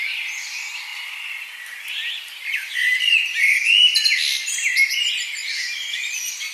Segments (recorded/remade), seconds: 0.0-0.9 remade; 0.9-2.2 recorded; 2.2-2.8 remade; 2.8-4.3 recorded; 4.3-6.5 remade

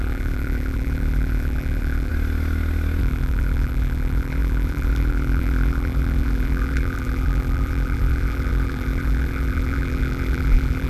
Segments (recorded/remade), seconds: 0.0-2.1 remade; 2.1-3.0 recorded; 3.0-10.9 remade

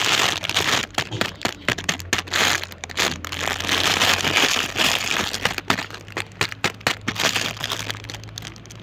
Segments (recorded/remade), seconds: 0.0-0.8 recorded; 0.8-1.9 remade; 1.9-8.8 recorded

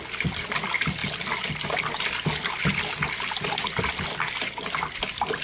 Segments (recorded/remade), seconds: 0.0-5.4 recorded

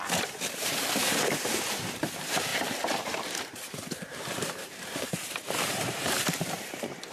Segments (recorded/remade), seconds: 0.0-7.1 remade